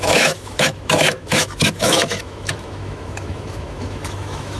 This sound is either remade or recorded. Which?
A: remade